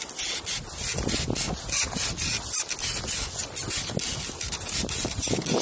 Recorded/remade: recorded